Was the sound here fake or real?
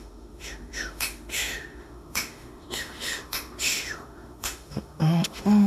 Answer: fake